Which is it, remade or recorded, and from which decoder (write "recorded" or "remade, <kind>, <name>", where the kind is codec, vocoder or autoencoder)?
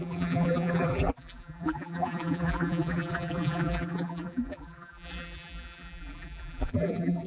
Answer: remade, vocoder, BigVGAN v2